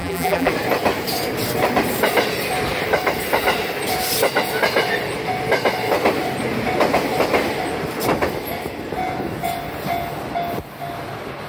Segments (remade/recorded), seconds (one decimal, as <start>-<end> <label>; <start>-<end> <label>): 0.0-0.5 remade; 0.5-11.5 recorded